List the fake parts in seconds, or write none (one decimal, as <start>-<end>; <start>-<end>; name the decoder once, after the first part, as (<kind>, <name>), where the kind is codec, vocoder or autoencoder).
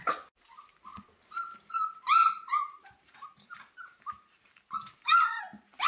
2.2-5.4 (vocoder, BigVGAN v2)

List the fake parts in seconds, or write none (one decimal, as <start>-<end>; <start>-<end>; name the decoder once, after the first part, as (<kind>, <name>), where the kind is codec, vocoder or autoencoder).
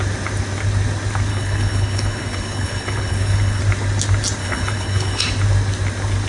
1.3-3.6 (codec, HILCodec); 4.4-5.2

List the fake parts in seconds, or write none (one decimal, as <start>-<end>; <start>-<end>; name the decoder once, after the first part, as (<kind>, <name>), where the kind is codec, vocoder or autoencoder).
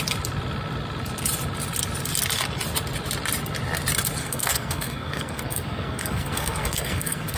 4.2-7.4 (codec, SNAC)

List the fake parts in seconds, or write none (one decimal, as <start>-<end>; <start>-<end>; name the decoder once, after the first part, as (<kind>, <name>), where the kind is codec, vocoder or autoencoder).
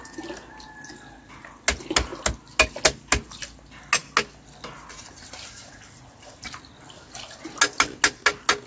none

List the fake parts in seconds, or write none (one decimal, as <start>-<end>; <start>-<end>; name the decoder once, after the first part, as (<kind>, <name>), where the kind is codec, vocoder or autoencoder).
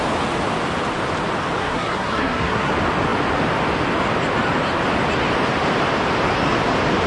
1.6-2.7 (codec, SNAC)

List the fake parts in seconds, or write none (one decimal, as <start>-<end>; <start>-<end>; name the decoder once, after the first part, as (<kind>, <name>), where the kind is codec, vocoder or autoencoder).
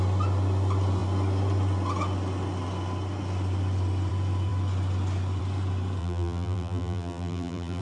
6.0-7.8 (vocoder, BigVGAN v2)